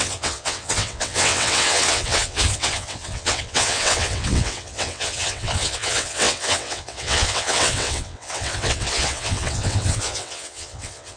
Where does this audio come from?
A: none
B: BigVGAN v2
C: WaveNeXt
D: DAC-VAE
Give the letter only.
C